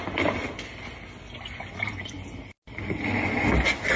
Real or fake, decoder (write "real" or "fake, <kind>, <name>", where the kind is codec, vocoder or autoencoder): real